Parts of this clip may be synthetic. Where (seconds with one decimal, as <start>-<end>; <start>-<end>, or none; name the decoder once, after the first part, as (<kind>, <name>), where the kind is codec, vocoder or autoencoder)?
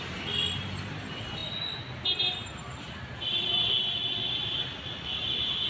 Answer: none